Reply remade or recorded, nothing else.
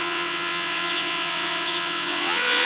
remade